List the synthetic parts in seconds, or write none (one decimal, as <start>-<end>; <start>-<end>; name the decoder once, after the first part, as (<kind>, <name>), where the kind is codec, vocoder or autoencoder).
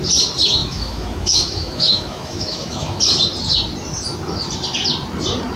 0.6-3.0 (autoencoder, DAC-VAE)